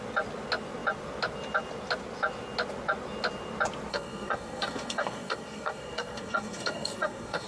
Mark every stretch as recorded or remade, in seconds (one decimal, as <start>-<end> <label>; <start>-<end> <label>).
0.0-3.9 recorded; 3.9-7.5 remade